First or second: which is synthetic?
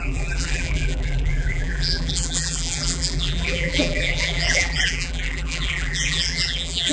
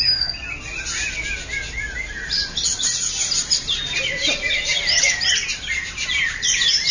first